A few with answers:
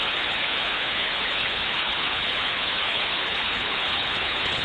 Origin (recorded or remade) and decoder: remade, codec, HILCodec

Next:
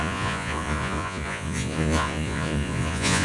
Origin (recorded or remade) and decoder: remade, vocoder, Vocos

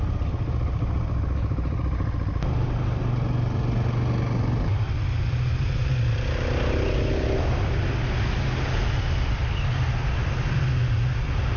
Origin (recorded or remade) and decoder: recorded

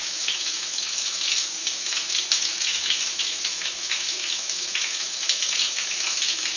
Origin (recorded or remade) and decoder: remade, autoencoder, DAC-VAE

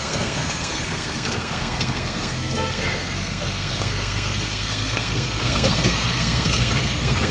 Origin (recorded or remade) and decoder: remade, codec, SNAC